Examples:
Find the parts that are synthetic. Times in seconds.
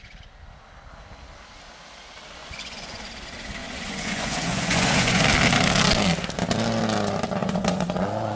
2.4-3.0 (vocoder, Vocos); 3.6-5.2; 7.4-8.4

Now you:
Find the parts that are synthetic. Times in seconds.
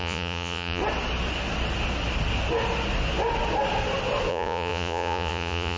0.0-0.8 (vocoder, Vocos); 4.3-5.8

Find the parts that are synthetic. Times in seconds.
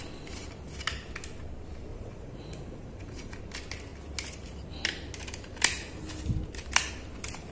1.9-3.4 (vocoder, Vocos)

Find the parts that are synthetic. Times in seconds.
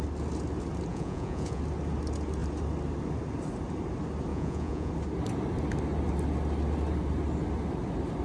0.9-1.6 (vocoder, Vocos); 4.3-4.9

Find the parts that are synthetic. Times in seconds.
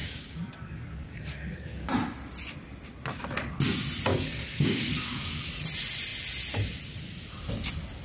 0.0-1.9 (codec, DAC); 4.1-5.4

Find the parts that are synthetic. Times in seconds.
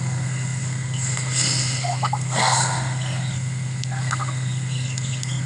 0.0-5.5 (codec, SNAC)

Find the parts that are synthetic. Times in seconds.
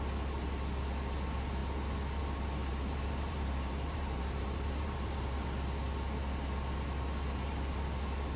2.6-5.3 (vocoder, BigVGAN v2)